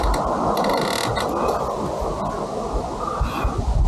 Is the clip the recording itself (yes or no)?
yes